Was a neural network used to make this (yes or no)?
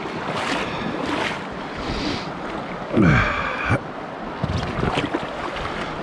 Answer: no